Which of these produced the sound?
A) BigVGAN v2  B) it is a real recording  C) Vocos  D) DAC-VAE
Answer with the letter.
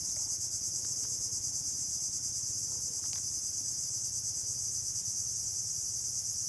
B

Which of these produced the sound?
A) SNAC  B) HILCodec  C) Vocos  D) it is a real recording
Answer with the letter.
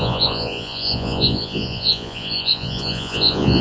C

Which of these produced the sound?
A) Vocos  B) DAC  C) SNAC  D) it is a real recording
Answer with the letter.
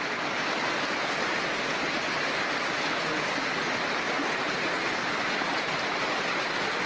D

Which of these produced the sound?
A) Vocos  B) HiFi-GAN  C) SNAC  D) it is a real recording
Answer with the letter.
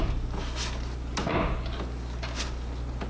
D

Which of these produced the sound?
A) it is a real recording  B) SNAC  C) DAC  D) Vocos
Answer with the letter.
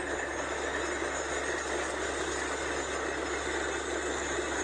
A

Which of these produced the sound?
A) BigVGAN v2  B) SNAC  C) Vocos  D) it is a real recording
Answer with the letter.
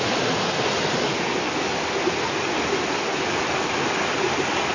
D